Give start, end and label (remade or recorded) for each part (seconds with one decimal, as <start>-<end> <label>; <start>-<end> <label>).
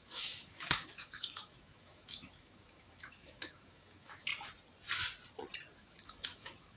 0.0-4.3 remade; 4.3-5.7 recorded; 5.7-6.8 remade